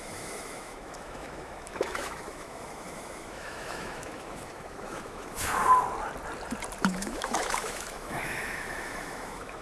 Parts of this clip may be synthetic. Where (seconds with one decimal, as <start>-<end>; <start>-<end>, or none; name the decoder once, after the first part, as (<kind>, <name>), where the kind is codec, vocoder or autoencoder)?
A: 0.0-5.6 (autoencoder, DAC-VAE); 6.8-9.6